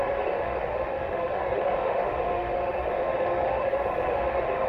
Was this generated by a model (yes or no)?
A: yes